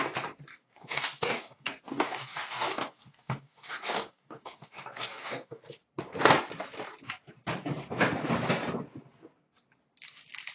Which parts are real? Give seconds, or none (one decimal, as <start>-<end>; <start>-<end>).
0.0-0.5; 5.6-10.5